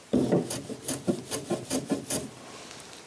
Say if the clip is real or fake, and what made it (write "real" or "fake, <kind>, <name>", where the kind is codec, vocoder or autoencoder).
fake, vocoder, BigVGAN v2